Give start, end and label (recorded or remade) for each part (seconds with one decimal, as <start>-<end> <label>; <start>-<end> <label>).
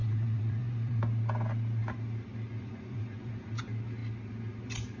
0.0-1.0 remade; 1.0-2.5 recorded; 2.5-3.6 remade; 3.6-5.0 recorded